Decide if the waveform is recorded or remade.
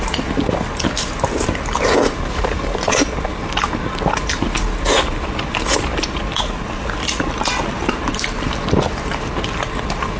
recorded